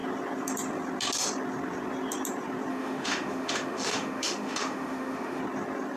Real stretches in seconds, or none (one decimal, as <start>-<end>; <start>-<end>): 0.0-2.7; 5.4-6.0